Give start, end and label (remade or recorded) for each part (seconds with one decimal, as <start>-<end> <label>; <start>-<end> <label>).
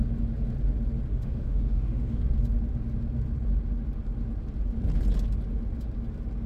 0.0-1.1 recorded; 1.1-2.2 remade; 2.2-6.5 recorded